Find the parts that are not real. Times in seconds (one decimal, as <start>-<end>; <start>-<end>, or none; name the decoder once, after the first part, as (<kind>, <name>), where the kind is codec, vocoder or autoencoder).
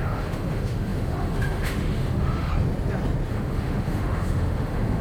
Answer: 0.0-2.5 (autoencoder, DAC-VAE); 3.3-5.0